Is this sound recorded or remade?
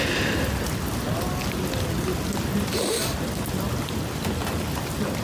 recorded